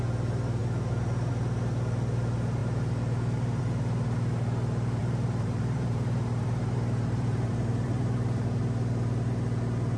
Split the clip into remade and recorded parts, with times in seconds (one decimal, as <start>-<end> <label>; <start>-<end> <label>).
0.0-5.0 recorded; 5.0-8.6 remade; 8.6-10.0 recorded